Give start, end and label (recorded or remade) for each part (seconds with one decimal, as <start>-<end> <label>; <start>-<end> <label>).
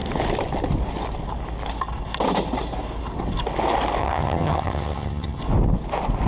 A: 0.0-4.0 recorded; 4.0-5.4 remade; 5.4-6.3 recorded